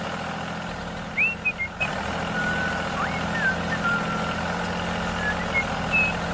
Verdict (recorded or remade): recorded